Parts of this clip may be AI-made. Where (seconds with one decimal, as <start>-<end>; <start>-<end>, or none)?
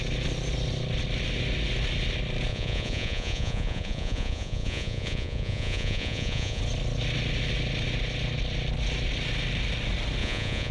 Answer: 2.5-6.6; 10.2-10.7